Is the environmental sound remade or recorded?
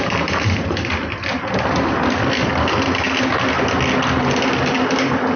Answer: recorded